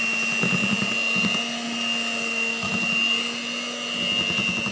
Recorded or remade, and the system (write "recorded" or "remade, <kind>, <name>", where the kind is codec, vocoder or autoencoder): recorded